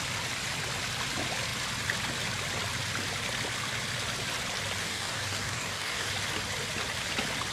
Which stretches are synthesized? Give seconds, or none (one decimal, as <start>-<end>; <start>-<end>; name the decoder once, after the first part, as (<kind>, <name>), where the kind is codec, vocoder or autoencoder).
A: 4.8-6.1 (codec, DAC)